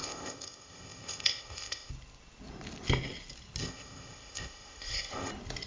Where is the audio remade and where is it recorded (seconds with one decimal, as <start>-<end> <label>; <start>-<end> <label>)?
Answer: 0.0-1.9 remade; 1.9-3.6 recorded; 3.6-5.3 remade; 5.3-5.7 recorded